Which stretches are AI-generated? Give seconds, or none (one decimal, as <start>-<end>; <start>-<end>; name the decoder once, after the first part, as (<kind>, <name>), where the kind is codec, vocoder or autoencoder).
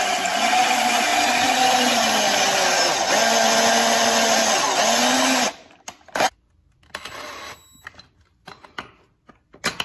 none